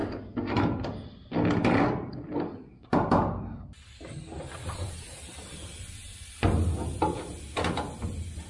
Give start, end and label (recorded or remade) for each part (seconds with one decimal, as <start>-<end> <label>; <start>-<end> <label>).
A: 0.0-8.5 recorded

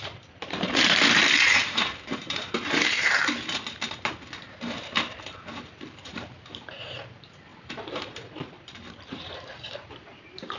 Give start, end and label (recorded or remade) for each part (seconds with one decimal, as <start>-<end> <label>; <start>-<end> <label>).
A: 0.0-3.2 remade; 3.2-5.8 recorded; 5.8-10.6 remade